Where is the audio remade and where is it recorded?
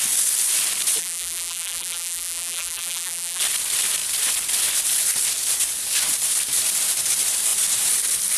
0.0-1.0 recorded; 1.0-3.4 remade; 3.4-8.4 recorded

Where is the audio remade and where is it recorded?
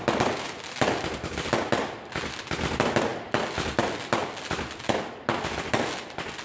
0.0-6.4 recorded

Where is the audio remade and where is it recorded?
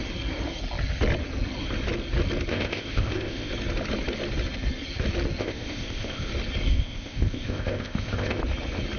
0.0-2.5 recorded; 2.5-3.5 remade; 3.5-5.4 recorded; 5.4-6.3 remade; 6.3-6.7 recorded; 6.7-8.4 remade; 8.4-9.0 recorded